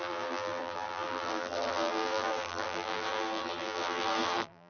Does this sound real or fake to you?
fake